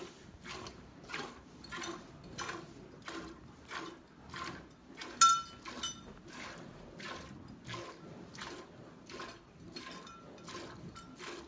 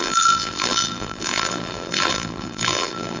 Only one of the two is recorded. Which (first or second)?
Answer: first